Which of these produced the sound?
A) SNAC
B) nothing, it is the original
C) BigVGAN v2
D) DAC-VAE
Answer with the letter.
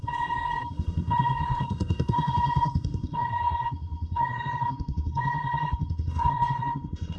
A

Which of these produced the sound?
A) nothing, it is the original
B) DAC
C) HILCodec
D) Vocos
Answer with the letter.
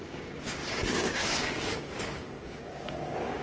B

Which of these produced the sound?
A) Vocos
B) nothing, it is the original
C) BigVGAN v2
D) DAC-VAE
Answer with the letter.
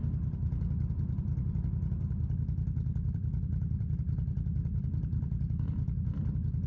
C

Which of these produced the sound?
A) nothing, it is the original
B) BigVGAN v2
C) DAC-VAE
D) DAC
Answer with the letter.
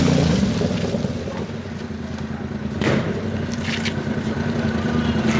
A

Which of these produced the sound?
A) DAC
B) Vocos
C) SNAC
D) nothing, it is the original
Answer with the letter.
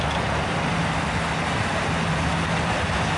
D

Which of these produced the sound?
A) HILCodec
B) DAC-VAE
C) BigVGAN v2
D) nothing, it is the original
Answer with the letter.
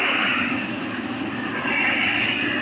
D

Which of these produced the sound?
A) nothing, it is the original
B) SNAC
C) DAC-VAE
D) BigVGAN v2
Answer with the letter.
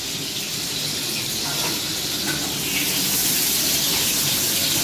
A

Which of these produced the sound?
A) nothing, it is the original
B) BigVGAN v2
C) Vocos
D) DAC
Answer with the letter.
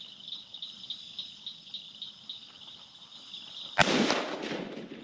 A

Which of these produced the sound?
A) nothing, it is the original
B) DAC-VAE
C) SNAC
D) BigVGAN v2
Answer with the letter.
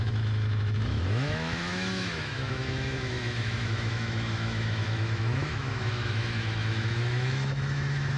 B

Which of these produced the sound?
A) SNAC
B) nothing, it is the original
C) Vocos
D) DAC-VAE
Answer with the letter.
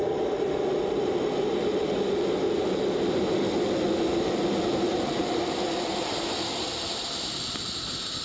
B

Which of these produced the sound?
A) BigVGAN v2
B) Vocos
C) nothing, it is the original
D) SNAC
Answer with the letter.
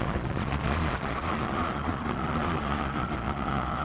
B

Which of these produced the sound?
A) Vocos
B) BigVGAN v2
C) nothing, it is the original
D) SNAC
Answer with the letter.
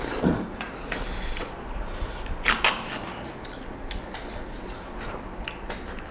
C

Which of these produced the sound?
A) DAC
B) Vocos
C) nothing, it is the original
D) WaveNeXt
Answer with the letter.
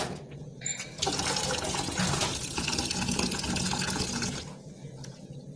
B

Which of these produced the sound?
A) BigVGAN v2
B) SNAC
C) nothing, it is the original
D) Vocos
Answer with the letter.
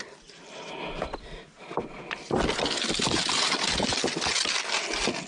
C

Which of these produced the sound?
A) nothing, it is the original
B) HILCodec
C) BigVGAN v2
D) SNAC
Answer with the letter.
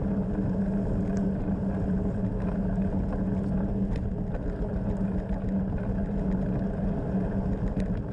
A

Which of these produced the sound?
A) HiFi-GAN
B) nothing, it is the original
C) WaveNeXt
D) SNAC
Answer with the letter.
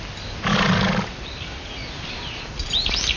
B